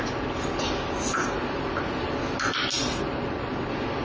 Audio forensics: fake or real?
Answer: real